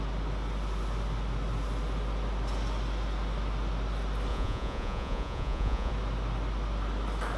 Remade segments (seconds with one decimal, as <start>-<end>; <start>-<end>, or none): 4.3-5.9